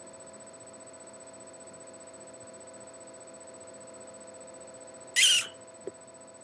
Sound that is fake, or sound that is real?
real